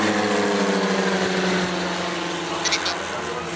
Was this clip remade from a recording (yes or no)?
no